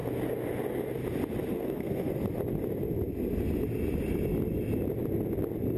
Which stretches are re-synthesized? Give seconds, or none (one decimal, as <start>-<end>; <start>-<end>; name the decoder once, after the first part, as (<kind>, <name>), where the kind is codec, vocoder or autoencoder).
1.5-2.1 (codec, SNAC)